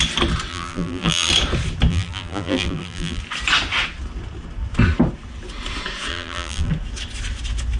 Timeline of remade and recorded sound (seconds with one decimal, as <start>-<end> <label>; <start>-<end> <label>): 0.0-0.5 recorded; 0.5-1.3 remade; 1.3-1.9 recorded; 1.9-3.2 remade; 3.2-6.1 recorded; 6.1-6.7 remade; 6.7-7.8 recorded